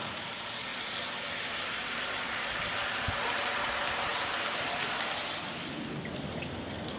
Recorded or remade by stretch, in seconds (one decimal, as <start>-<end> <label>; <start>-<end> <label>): 0.0-7.0 recorded